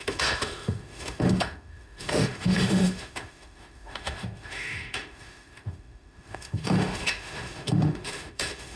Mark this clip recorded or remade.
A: remade